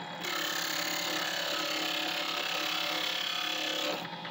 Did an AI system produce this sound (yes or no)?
no